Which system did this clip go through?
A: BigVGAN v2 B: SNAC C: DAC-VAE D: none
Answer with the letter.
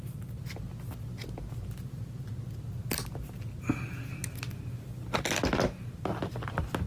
D